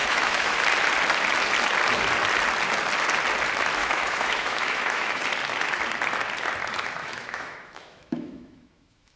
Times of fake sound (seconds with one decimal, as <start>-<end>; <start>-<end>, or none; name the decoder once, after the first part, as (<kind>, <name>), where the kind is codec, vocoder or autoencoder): 0.0-0.6 (autoencoder, DAC-VAE); 3.8-5.2; 7.0-9.2